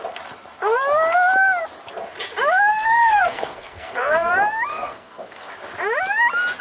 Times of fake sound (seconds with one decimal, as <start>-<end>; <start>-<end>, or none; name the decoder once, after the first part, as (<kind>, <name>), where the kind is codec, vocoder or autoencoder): 2.7-4.3 (codec, SNAC); 4.7-5.5